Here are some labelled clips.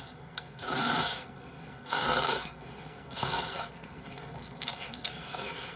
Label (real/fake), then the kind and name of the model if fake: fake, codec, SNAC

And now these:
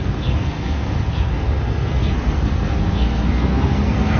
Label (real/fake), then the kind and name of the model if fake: fake, codec, SNAC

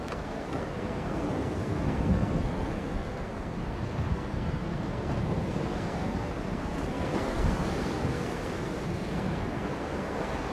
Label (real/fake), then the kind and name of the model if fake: fake, codec, SNAC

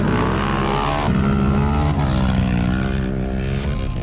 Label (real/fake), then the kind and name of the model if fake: real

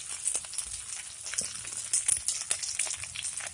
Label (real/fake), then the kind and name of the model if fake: real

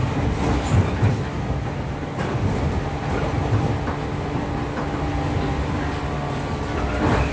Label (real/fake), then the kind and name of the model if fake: real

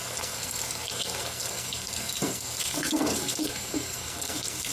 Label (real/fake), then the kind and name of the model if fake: fake, codec, SNAC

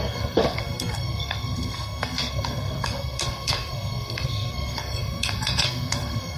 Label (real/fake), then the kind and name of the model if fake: fake, codec, SNAC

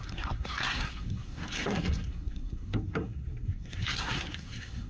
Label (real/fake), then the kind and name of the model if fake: fake, codec, SNAC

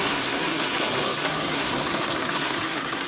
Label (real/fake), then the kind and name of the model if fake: fake, codec, SNAC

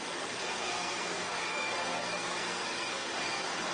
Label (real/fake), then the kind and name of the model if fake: fake, codec, SNAC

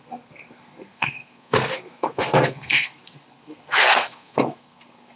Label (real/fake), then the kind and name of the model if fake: fake, codec, SNAC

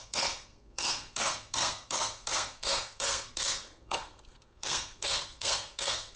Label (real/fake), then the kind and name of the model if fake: fake, codec, SNAC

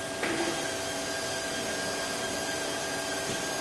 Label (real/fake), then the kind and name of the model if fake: real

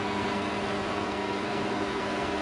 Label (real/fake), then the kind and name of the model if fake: fake, codec, SNAC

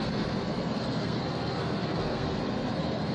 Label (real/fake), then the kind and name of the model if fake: fake, codec, SNAC